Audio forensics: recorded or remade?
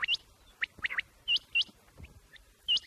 recorded